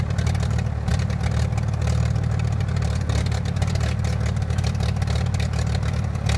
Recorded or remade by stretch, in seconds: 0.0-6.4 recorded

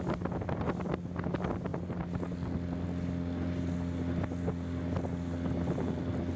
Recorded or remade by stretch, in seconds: 0.0-6.4 recorded

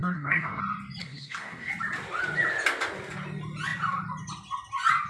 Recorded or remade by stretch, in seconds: 0.0-0.6 remade; 0.6-1.0 recorded; 1.0-1.7 remade; 1.7-5.1 recorded

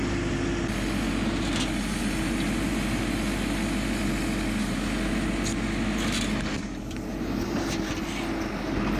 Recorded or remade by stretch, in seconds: 0.0-9.0 recorded